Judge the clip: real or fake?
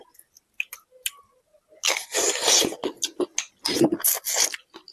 real